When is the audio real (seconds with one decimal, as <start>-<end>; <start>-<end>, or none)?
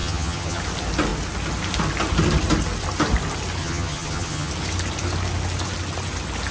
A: 0.6-3.6; 4.5-6.5